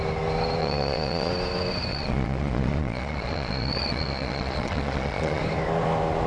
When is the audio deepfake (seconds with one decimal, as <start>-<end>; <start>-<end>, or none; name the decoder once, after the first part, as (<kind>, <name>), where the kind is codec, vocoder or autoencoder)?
0.6-1.3 (vocoder, Vocos); 1.9-5.4